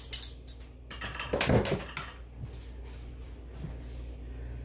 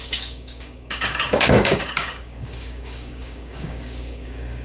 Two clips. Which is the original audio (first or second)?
first